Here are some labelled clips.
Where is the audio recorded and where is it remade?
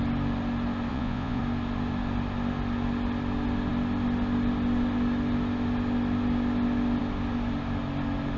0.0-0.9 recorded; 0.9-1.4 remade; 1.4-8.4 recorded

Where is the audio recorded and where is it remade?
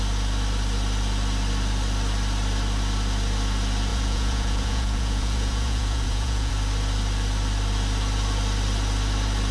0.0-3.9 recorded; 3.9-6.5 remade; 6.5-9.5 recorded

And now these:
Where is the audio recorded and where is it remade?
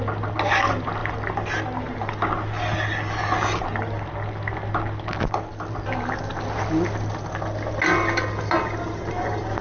0.0-9.6 recorded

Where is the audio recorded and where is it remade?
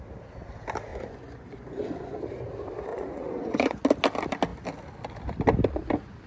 0.0-0.9 recorded; 0.9-2.2 remade; 2.2-2.9 recorded; 2.9-3.8 remade; 3.8-6.3 recorded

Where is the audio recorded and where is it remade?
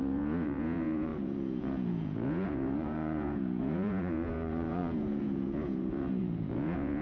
0.0-7.0 remade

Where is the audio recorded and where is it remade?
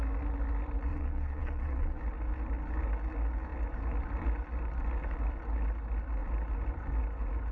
0.0-0.9 recorded; 0.9-2.0 remade; 2.0-7.5 recorded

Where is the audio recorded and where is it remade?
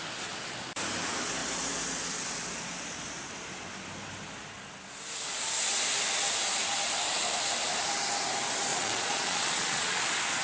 0.0-8.7 recorded; 8.7-10.0 remade; 10.0-10.4 recorded